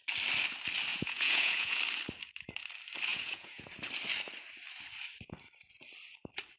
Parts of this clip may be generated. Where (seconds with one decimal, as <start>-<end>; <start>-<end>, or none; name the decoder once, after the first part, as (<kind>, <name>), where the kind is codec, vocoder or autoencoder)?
0.9-1.8 (vocoder, Vocos); 3.1-3.7